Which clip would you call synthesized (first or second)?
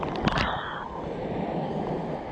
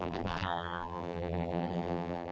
second